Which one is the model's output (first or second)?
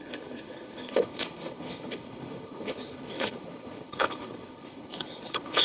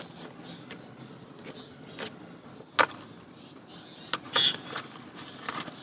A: first